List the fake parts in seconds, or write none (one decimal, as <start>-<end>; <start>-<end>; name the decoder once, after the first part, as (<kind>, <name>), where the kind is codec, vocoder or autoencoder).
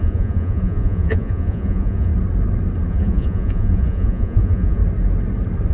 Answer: 0.0-2.1 (vocoder, Vocos); 2.9-4.8